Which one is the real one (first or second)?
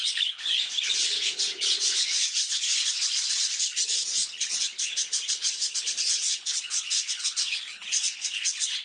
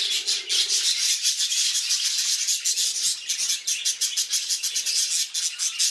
second